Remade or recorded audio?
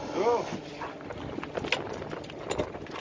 recorded